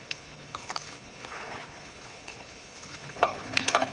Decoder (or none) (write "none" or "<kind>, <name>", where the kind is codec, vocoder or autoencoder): codec, HILCodec